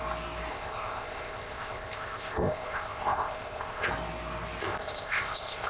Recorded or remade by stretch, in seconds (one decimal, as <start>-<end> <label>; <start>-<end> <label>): 0.0-0.5 recorded; 0.5-3.9 remade; 3.9-4.6 recorded; 4.6-5.7 remade